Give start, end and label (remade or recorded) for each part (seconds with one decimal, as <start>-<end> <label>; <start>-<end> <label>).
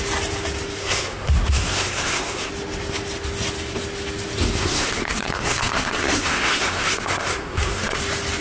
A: 0.0-0.8 recorded; 0.8-2.5 remade; 2.5-4.6 recorded; 4.6-8.0 remade; 8.0-8.4 recorded